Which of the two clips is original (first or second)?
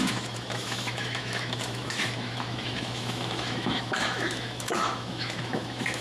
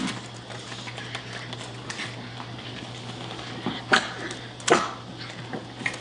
second